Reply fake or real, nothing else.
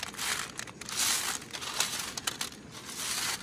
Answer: real